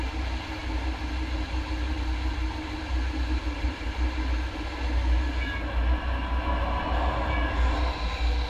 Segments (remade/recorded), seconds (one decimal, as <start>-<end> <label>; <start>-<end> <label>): 0.0-8.5 recorded